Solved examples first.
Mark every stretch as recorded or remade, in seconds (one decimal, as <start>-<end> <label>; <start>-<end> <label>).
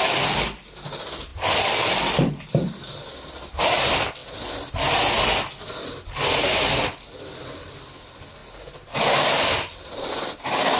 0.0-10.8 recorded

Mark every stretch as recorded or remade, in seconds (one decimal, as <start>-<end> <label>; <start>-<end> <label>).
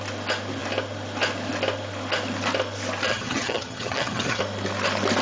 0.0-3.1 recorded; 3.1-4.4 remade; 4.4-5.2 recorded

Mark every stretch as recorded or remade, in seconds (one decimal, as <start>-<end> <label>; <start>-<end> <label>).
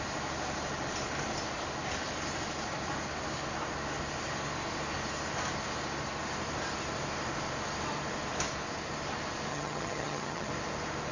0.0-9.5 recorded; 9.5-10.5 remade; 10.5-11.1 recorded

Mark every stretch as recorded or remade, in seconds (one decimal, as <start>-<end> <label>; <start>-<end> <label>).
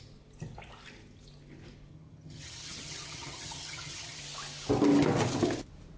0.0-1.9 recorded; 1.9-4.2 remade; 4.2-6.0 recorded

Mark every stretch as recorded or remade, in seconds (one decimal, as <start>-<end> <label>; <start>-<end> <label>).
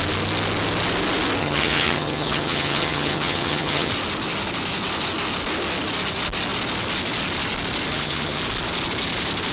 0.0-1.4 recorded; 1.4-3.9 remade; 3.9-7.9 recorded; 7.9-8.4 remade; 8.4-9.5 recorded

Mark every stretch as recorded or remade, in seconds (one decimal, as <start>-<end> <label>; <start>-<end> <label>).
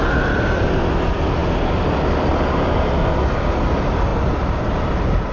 0.0-5.3 recorded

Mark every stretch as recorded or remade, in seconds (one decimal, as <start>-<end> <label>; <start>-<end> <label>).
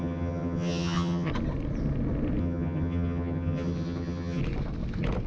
0.0-1.3 remade; 1.3-2.4 recorded; 2.4-4.4 remade; 4.4-5.3 recorded